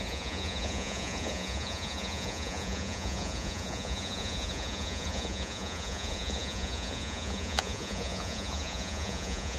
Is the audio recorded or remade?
remade